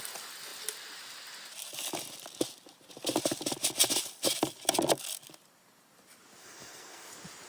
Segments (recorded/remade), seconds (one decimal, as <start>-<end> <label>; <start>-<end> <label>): 0.0-6.4 recorded; 6.4-7.1 remade; 7.1-7.5 recorded